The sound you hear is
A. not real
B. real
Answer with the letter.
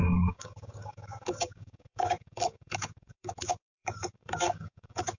A